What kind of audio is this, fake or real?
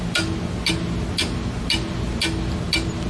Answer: real